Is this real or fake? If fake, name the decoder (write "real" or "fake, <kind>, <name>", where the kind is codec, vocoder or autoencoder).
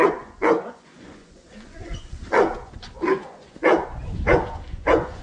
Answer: fake, vocoder, Vocos